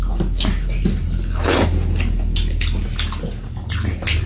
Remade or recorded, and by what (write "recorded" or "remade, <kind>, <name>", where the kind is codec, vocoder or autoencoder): recorded